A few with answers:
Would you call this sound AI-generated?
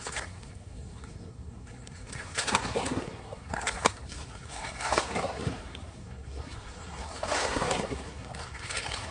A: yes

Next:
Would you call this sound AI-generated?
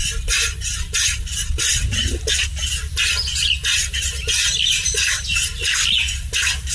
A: no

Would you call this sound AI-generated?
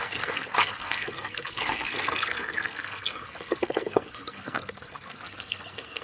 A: yes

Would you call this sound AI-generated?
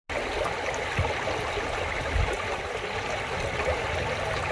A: no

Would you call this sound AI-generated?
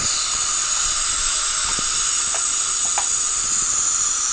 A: no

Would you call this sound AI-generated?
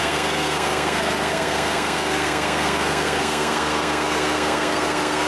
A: yes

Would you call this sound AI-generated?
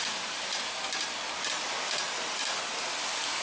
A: no